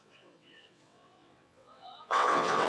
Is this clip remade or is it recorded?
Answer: remade